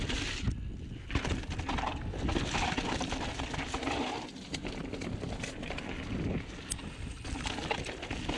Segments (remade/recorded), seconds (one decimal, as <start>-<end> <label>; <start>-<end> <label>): 0.0-8.4 recorded